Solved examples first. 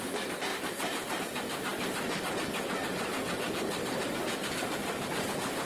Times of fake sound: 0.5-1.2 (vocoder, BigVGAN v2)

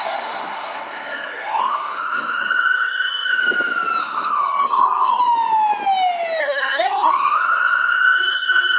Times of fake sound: 0.0-3.4 (codec, SNAC); 4.0-5.2; 6.4-8.8

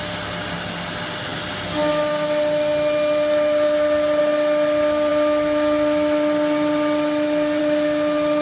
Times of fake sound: none

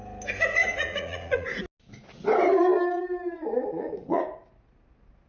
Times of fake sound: 0.6-1.6 (vocoder, Vocos); 3.7-4.2

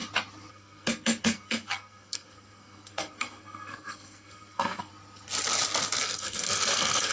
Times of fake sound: 0.5-4.9 (codec, SNAC); 6.0-7.1

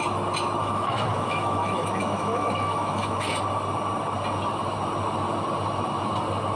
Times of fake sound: 0.6-3.3 (autoencoder, DAC-VAE)

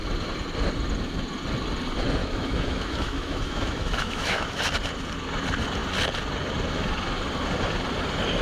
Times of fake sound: 2.2-4.6 (autoencoder, DAC-VAE)